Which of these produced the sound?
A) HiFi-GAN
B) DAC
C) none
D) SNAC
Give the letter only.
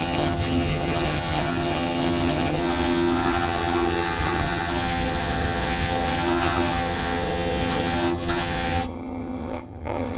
A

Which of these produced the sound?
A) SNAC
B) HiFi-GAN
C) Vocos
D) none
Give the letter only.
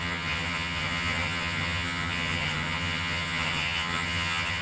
B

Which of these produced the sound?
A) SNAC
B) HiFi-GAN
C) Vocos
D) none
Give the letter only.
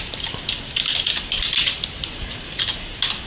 D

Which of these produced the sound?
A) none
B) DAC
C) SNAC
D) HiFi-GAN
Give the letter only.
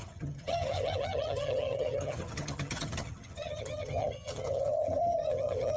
D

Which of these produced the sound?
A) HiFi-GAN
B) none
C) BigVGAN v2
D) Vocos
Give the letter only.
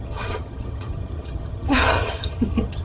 A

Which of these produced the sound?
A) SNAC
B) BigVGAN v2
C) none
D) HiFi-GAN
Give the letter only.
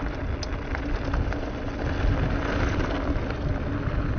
C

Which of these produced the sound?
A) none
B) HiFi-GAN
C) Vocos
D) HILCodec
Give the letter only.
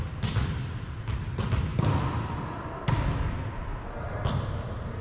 A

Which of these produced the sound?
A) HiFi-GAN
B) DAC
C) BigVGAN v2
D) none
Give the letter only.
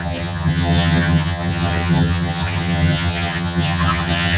A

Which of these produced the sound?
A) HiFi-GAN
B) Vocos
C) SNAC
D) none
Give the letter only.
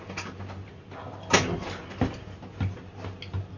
D